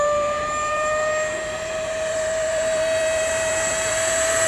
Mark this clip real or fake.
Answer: fake